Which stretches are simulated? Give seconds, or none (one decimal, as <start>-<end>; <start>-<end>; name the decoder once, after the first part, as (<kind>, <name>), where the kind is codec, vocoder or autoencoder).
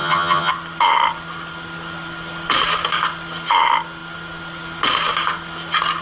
0.0-0.5 (vocoder, HiFi-GAN)